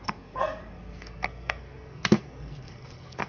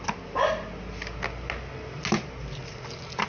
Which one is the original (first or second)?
second